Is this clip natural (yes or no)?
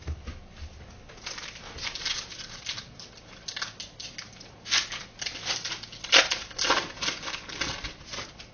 yes